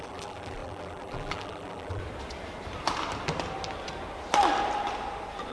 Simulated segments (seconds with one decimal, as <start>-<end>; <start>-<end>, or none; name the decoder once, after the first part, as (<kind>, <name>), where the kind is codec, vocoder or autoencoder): 0.0-2.0 (vocoder, BigVGAN v2)